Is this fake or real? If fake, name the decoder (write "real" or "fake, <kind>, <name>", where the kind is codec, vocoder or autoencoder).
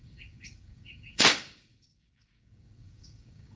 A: fake, codec, DAC